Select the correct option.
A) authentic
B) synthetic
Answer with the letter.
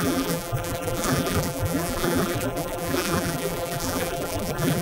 B